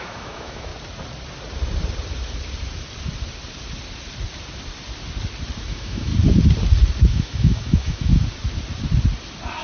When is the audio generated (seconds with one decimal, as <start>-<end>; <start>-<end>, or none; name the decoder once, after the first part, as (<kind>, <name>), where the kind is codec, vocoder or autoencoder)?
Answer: 0.0-0.7 (autoencoder, DAC-VAE); 5.6-6.1; 7.1-8.1